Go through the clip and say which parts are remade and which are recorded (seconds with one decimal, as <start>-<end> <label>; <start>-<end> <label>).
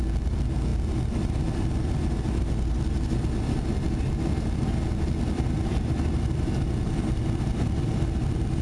0.0-8.6 recorded